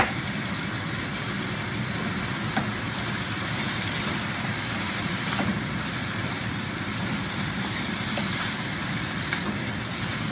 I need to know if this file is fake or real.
fake